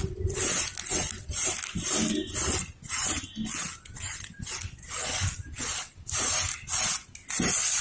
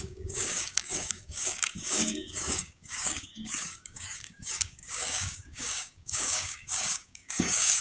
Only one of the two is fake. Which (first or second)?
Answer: second